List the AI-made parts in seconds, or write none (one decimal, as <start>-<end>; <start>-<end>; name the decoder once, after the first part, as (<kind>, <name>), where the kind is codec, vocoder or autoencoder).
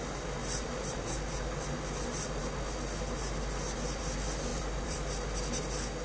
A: 4.5-5.4 (vocoder, BigVGAN v2)